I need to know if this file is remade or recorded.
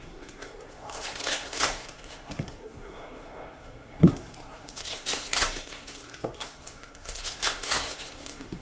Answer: remade